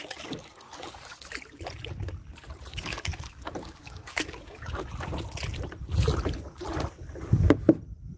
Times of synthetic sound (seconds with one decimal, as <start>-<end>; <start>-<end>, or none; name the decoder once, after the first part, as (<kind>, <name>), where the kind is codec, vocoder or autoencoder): 0.0-1.3 (codec, DAC); 2.7-4.9